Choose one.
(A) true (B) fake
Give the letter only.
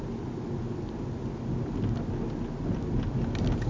A